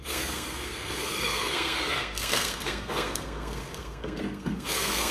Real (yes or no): no